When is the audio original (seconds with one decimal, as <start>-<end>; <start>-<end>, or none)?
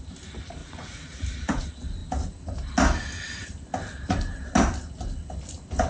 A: 0.0-0.6; 1.6-5.9